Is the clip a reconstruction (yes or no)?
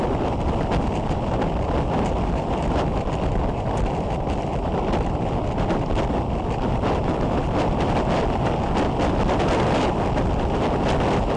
no